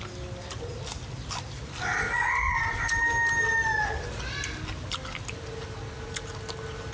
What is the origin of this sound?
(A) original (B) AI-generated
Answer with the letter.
A